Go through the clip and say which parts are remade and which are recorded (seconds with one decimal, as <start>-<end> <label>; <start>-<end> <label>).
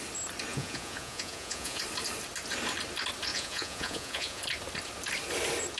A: 0.0-0.5 recorded; 0.5-1.8 remade; 1.8-3.3 recorded; 3.3-4.4 remade; 4.4-5.8 recorded